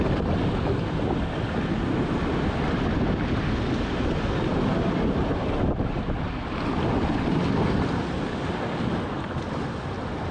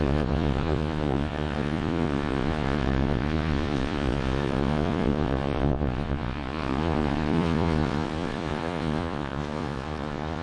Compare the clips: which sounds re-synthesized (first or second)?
second